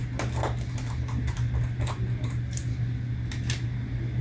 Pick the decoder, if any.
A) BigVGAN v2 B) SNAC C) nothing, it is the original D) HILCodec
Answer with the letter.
C